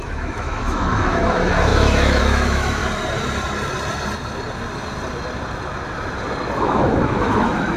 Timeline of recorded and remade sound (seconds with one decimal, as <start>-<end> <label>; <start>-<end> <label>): 0.0-2.8 remade; 2.8-6.6 recorded; 6.6-7.8 remade

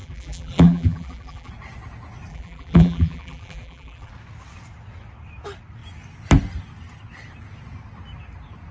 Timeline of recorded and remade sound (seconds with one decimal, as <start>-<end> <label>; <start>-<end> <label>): 0.0-1.5 remade; 1.5-2.3 recorded; 2.3-4.1 remade; 4.1-8.7 recorded

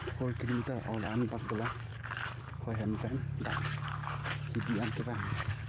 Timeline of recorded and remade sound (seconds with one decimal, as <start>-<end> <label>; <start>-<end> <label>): 0.0-1.9 remade; 1.9-2.4 recorded; 2.4-4.2 remade; 4.2-5.0 recorded; 5.0-5.7 remade

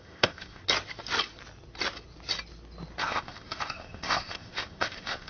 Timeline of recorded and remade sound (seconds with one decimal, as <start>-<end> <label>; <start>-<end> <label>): 0.0-0.6 remade; 0.6-3.0 recorded; 3.0-5.3 remade

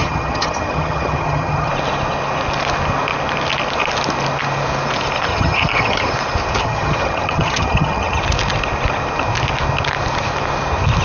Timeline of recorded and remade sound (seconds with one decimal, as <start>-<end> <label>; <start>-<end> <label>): 0.0-1.7 remade; 1.7-5.3 recorded; 5.3-6.1 remade; 6.1-6.6 recorded; 6.6-8.2 remade; 8.2-11.0 recorded